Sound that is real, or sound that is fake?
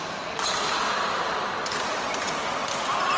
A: real